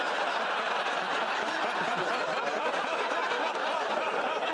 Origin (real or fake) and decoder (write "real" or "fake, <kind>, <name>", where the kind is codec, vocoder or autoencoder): real